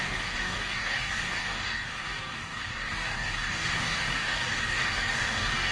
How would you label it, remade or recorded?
remade